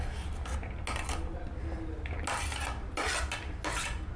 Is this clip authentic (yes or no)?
yes